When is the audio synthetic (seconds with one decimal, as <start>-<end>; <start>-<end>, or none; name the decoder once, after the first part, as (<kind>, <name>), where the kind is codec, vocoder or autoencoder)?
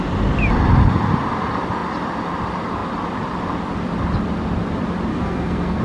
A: 5.1-5.8 (codec, SNAC)